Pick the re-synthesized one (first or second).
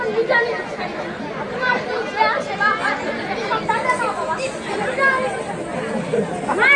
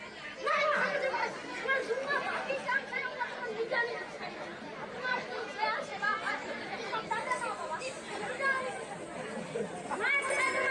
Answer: second